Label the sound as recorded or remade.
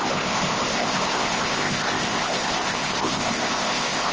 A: remade